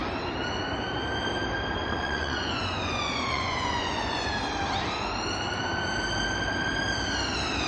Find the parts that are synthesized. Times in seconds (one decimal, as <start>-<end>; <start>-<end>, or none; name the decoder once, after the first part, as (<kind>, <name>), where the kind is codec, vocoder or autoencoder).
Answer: 1.8-4.3 (vocoder, Vocos)